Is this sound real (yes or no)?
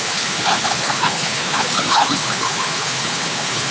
no